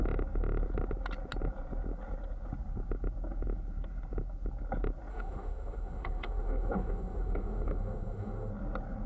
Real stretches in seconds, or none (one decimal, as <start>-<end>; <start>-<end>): 0.0-5.1; 8.5-9.1